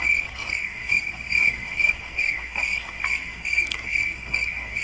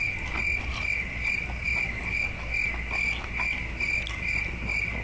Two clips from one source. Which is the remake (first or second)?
first